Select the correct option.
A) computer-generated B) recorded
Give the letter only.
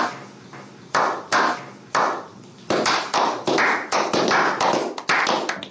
B